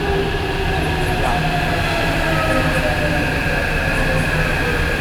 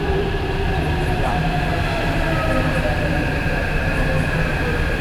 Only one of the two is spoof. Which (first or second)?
second